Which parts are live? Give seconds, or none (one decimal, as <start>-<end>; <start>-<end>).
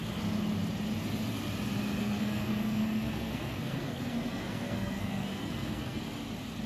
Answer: 0.0-2.0; 6.0-6.7